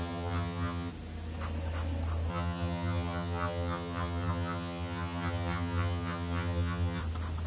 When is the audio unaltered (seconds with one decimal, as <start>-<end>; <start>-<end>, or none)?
0.9-2.3; 7.0-7.5